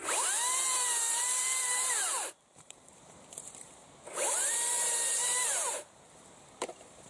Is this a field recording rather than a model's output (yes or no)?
no